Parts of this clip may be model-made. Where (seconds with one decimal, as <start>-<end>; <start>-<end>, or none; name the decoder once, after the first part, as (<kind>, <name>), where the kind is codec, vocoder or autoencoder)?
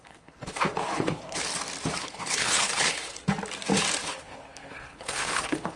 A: 0.0-1.5 (codec, HILCodec); 2.0-3.2; 4.0-5.8